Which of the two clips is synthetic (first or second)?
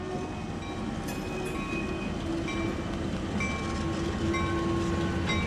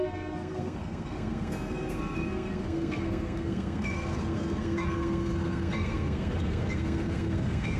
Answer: second